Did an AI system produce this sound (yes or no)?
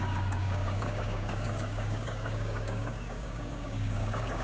yes